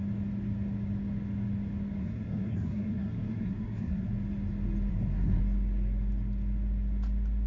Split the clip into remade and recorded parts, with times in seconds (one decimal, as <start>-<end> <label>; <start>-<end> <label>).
0.0-2.0 recorded; 2.0-4.1 remade; 4.1-4.9 recorded; 4.9-5.4 remade; 5.4-7.5 recorded